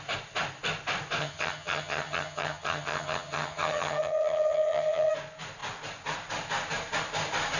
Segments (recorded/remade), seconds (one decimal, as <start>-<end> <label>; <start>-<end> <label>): 0.0-1.2 recorded; 1.2-5.1 remade; 5.1-7.6 recorded